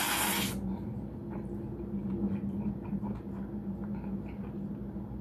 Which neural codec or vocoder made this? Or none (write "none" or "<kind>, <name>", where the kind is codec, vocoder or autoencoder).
none